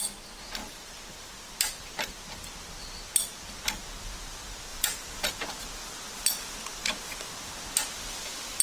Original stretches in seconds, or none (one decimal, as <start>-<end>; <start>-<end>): 0.0-0.6; 2.1-4.7; 5.3-8.6